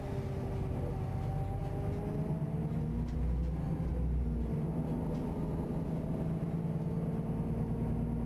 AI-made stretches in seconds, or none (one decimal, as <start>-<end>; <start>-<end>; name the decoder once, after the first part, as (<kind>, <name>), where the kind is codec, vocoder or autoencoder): none